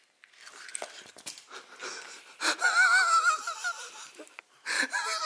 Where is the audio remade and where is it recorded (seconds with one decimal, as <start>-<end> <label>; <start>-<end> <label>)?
0.0-5.3 recorded